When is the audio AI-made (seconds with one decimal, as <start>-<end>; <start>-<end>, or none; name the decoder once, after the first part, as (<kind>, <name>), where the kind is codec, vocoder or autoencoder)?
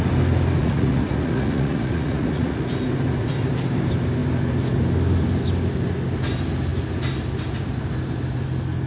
0.6-2.7 (vocoder, Vocos)